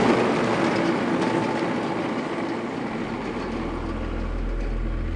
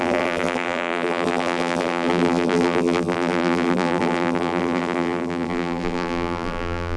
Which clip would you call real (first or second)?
first